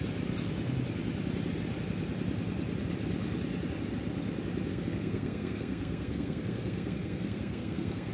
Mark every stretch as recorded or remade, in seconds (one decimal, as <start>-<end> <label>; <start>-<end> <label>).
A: 0.0-4.7 recorded; 4.7-8.1 remade